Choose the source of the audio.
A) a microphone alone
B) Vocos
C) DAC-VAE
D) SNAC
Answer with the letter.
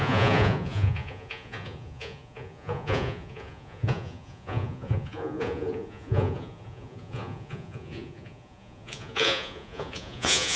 B